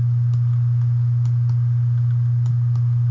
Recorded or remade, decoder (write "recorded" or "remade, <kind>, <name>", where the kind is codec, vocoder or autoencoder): recorded